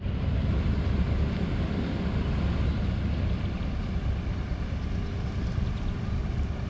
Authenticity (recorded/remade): recorded